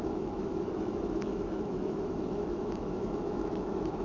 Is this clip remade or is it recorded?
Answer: remade